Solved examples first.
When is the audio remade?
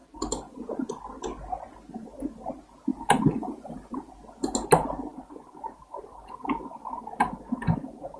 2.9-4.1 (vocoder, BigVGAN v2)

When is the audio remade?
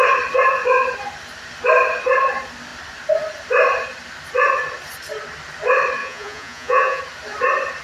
6.0-7.0 (vocoder, Vocos)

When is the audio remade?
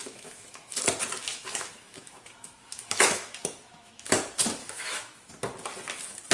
0.0-0.8 (autoencoder, DAC-VAE); 1.3-4.1; 4.6-5.3